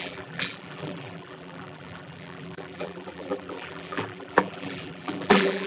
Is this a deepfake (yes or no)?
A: yes